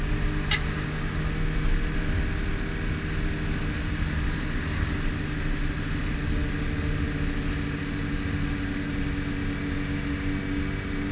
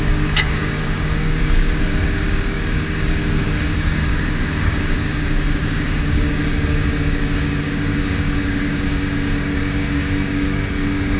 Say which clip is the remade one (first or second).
second